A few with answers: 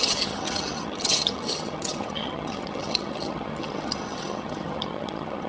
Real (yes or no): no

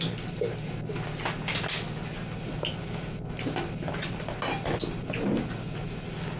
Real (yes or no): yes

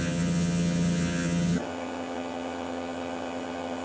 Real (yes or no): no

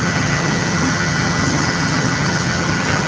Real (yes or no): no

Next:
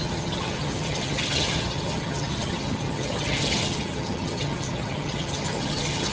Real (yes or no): no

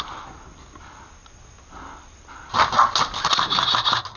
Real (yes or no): yes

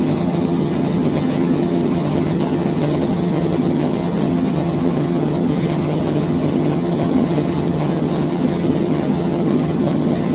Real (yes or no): no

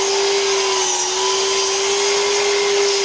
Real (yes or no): yes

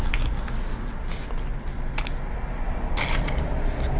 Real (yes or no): yes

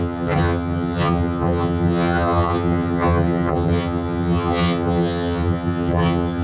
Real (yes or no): no